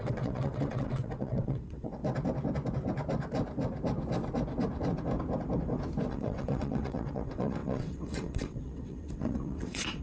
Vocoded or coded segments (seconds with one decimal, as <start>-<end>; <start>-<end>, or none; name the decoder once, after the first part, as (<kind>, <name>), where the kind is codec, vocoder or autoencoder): 0.0-2.0 (vocoder, WaveNeXt); 6.1-10.0